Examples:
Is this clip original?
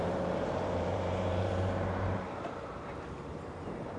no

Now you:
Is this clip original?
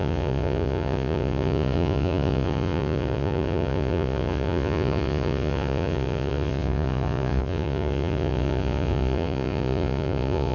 no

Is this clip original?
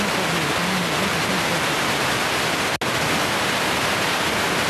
yes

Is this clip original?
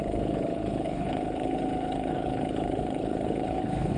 no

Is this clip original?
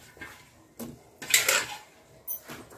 yes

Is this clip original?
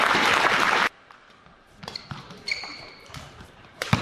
no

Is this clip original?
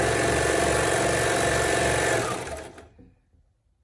yes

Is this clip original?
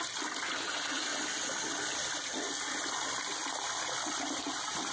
yes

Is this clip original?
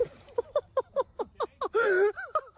yes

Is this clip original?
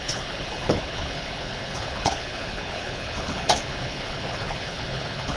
no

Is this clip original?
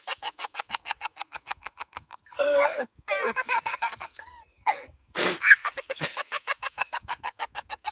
no